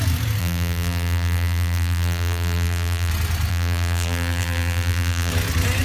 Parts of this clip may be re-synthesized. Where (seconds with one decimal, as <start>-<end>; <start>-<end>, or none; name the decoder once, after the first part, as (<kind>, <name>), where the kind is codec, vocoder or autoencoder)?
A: 0.4-3.1 (vocoder, BigVGAN v2); 3.5-5.3